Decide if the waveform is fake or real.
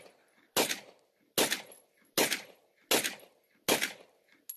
real